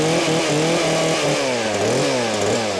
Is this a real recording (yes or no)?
yes